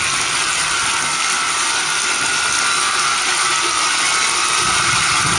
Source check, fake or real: real